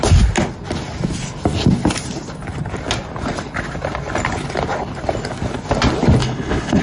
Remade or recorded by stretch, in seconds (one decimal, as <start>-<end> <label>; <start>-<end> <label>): 0.0-6.2 recorded; 6.2-6.8 remade